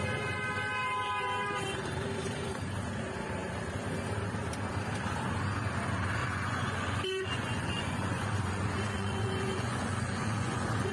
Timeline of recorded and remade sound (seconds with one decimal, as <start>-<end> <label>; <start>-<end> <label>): 0.0-6.2 recorded; 6.2-10.9 remade